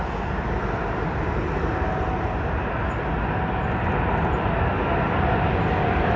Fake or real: real